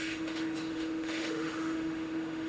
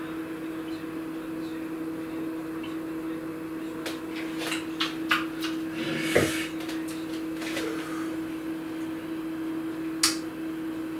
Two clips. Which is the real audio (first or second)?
second